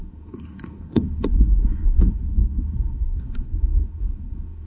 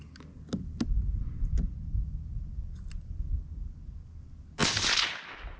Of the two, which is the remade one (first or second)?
first